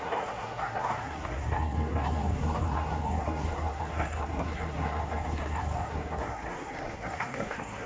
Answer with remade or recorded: remade